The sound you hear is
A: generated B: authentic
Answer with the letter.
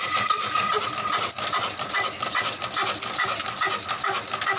B